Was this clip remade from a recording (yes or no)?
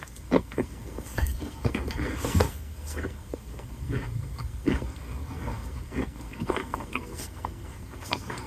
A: yes